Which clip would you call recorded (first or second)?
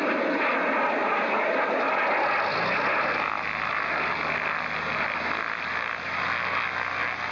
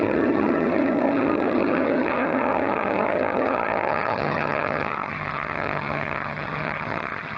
first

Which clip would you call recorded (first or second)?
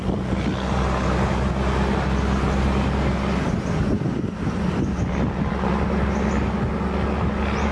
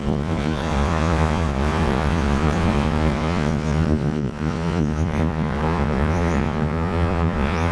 first